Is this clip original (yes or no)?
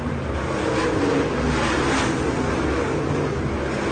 yes